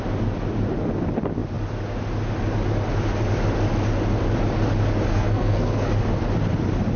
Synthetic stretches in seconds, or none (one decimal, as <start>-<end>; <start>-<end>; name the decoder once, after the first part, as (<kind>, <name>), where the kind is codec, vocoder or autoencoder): 5.1-5.9 (codec, SNAC)